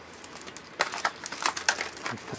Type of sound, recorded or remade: recorded